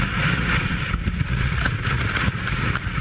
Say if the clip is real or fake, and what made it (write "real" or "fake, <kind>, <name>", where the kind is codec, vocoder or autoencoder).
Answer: fake, vocoder, Vocos